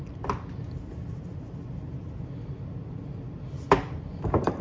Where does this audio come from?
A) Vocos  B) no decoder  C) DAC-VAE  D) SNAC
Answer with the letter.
B